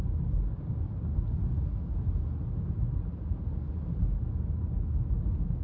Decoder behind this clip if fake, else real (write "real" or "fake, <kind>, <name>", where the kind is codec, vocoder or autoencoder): real